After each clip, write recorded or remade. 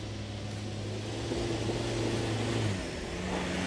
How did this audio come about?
recorded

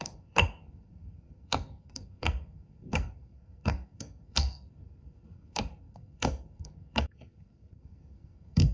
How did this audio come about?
remade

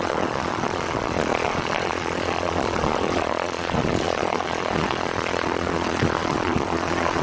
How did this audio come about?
remade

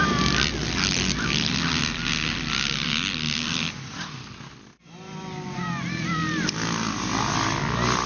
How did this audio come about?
remade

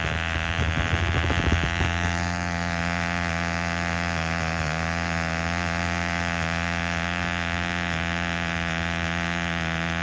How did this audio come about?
remade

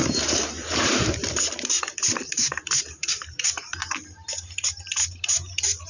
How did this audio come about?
remade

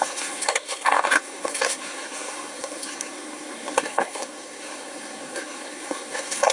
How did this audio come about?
remade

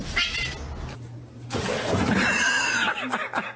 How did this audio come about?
recorded